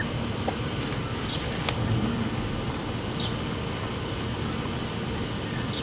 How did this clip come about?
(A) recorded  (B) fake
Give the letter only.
A